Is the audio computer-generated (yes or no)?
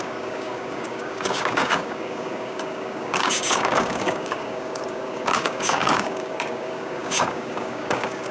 yes